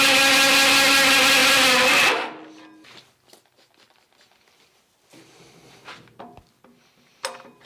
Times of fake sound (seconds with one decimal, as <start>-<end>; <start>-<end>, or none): none